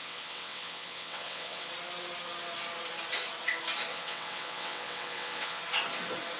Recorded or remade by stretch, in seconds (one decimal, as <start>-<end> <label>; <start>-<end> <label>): 0.0-1.7 remade; 1.7-3.9 recorded; 3.9-5.6 remade; 5.6-6.4 recorded